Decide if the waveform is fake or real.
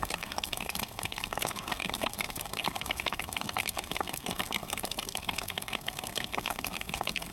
fake